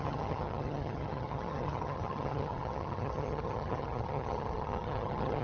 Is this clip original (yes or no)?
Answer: no